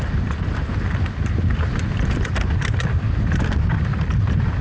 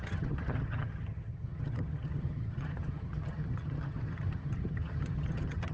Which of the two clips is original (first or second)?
first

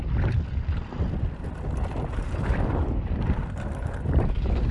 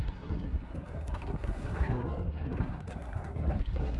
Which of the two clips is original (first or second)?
first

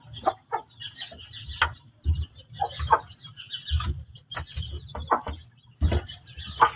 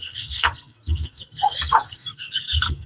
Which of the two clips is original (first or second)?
first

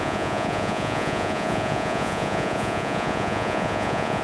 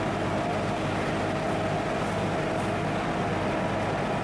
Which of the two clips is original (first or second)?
second